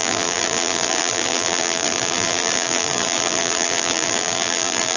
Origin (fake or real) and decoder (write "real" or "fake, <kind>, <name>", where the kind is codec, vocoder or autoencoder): fake, vocoder, BigVGAN v2